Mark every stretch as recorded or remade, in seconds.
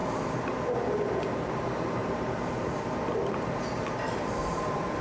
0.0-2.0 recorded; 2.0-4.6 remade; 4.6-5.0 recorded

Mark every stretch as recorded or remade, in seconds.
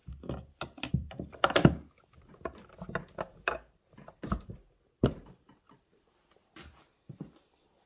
0.0-0.9 recorded; 0.9-7.9 remade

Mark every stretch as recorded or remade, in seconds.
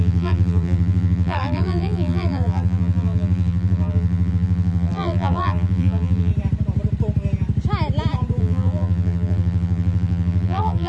0.0-6.3 remade; 6.3-8.4 recorded; 8.4-10.9 remade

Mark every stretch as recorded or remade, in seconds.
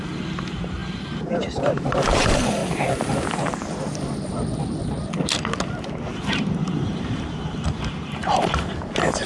0.0-2.6 remade; 2.6-6.2 recorded; 6.2-9.3 remade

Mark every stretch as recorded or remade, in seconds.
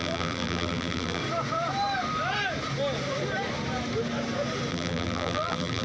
0.0-1.2 remade; 1.2-4.7 recorded; 4.7-5.8 remade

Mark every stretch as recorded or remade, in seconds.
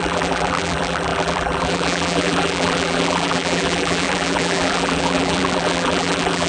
0.0-6.5 remade